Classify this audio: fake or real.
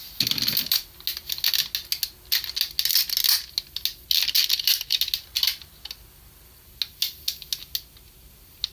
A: real